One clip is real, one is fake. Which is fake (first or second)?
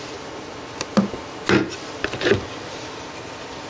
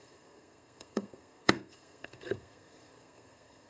second